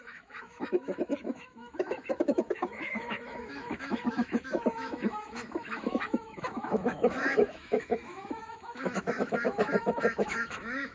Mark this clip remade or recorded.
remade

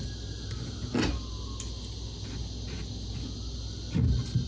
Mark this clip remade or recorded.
recorded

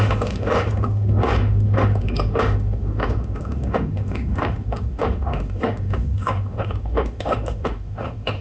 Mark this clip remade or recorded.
remade